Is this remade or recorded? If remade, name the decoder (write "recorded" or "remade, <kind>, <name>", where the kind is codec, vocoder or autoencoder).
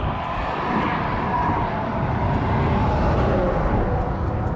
recorded